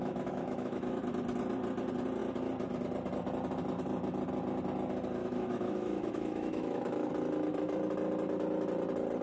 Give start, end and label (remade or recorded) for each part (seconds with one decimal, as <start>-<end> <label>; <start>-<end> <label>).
0.0-1.0 remade; 1.0-5.2 recorded; 5.2-7.1 remade; 7.1-9.2 recorded